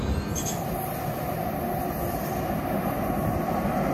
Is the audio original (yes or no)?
yes